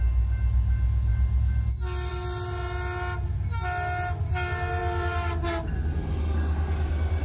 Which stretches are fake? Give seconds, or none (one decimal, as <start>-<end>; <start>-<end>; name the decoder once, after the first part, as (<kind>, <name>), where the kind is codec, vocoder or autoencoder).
none

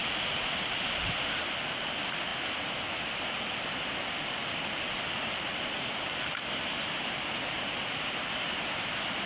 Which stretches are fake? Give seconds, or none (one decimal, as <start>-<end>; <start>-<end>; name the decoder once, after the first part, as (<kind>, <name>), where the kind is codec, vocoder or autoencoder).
4.4-6.3 (vocoder, BigVGAN v2)

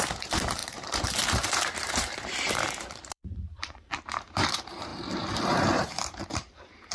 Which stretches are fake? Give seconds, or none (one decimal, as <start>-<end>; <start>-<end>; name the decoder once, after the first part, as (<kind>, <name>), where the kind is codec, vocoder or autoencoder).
0.0-6.9 (vocoder, BigVGAN v2)

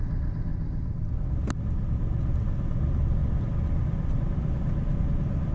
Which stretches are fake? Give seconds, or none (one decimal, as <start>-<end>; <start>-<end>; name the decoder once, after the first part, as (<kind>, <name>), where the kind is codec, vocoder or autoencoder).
0.5-1.1 (vocoder, BigVGAN v2)

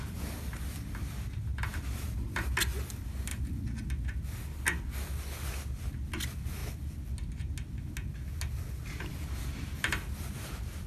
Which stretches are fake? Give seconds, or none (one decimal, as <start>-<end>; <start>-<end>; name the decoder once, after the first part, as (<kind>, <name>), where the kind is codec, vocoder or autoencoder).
none